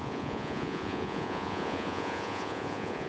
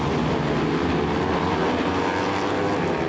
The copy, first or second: first